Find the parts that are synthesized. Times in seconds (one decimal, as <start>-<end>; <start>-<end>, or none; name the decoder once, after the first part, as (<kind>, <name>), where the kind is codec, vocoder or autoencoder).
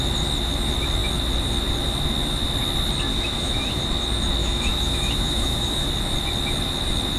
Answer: 3.1-3.8 (autoencoder, DAC-VAE); 4.4-5.9